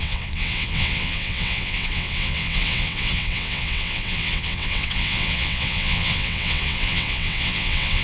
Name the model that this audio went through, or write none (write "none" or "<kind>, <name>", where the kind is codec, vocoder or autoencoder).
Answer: vocoder, WaveNeXt